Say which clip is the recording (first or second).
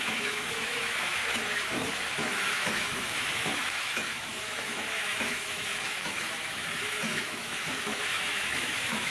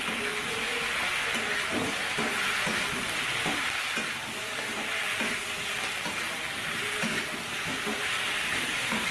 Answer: second